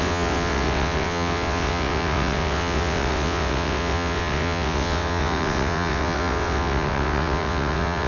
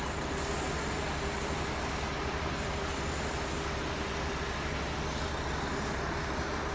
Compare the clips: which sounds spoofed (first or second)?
first